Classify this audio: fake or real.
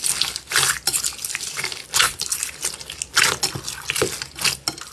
real